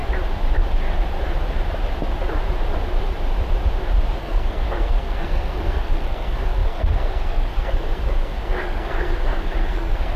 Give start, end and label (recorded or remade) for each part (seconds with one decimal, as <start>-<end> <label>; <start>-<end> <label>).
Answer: 0.0-4.2 recorded; 4.2-10.2 remade